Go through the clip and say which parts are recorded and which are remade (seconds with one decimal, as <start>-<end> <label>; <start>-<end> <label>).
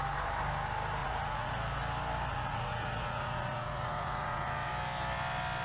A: 0.0-1.0 recorded; 1.0-1.5 remade; 1.5-2.3 recorded; 2.3-4.7 remade; 4.7-5.6 recorded